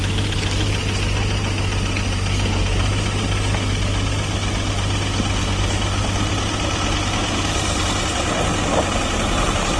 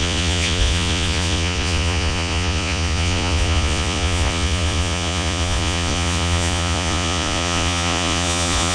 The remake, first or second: second